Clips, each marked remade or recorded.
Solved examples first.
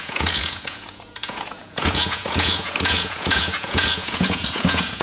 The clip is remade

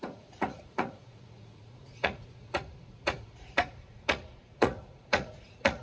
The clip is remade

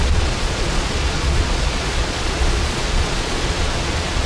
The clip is remade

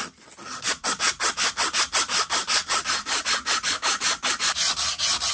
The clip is recorded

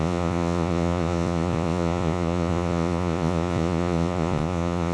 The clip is remade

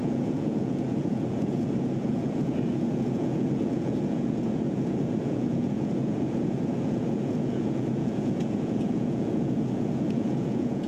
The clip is remade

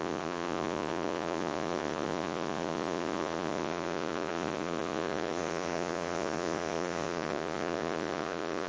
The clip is remade